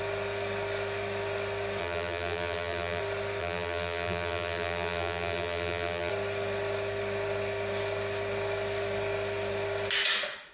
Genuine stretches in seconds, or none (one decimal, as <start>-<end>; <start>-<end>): 0.0-1.8; 3.0-3.4; 6.1-10.5

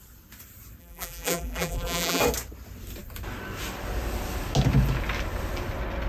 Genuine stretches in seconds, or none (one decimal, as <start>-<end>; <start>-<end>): 0.0-0.8; 2.2-6.1

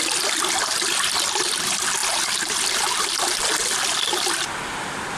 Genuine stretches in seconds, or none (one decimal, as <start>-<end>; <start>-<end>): 0.0-5.2